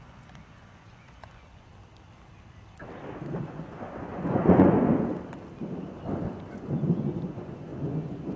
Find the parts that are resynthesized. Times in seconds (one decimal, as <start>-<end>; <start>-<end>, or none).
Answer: 0.0-1.7; 3.4-5.1; 6.5-8.4